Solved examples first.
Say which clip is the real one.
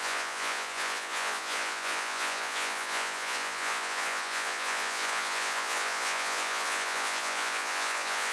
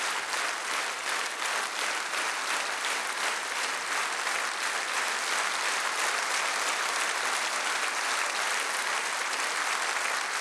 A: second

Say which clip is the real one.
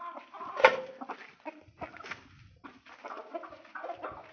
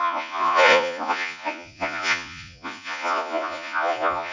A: first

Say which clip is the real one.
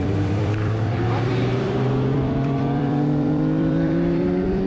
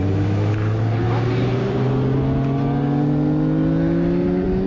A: second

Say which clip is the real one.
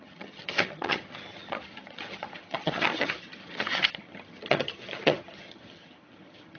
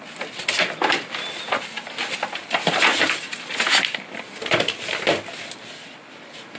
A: second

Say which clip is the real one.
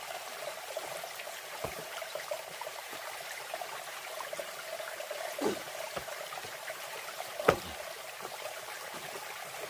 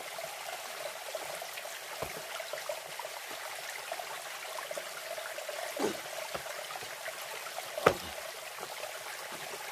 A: second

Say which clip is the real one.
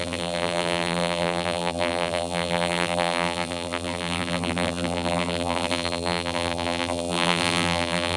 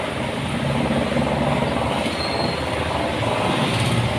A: second